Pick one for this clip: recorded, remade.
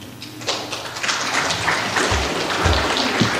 recorded